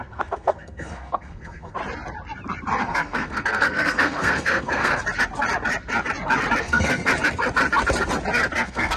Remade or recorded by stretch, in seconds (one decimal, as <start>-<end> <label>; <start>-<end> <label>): 0.0-1.8 remade; 1.8-2.8 recorded; 2.8-5.0 remade; 5.0-6.6 recorded; 6.6-7.1 remade; 7.1-8.6 recorded; 8.6-9.0 remade